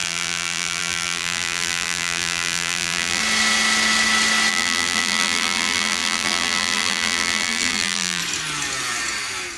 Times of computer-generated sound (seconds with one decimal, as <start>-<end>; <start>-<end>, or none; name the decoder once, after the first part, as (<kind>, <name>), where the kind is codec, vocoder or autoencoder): 0.0-3.2 (vocoder, BigVGAN v2); 4.5-8.2